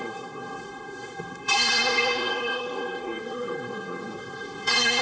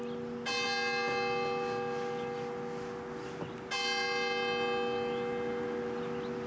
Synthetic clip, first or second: first